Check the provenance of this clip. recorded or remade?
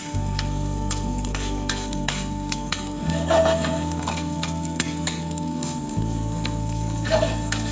remade